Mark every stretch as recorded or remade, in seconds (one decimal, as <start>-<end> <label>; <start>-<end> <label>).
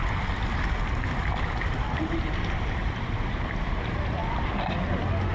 0.0-2.0 recorded; 2.0-4.2 remade; 4.2-5.3 recorded